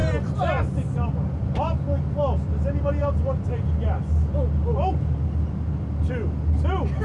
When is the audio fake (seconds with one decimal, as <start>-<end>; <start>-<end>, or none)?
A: 0.0-2.2